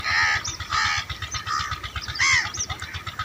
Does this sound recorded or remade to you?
recorded